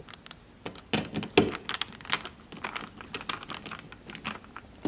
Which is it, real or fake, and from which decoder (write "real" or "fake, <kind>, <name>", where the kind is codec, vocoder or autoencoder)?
real